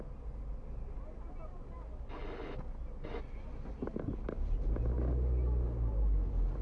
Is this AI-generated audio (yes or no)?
no